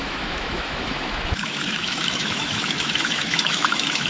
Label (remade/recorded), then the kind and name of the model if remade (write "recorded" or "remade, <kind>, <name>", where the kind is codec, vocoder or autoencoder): remade, autoencoder, DAC-VAE